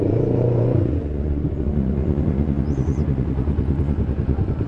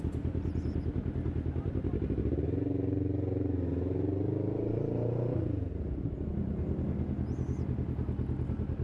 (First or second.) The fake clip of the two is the first